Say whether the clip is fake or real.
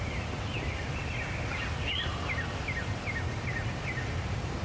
real